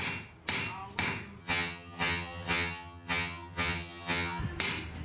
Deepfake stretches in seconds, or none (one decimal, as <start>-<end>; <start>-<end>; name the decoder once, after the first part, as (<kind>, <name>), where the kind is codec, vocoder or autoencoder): 1.4-4.4 (vocoder, HiFi-GAN)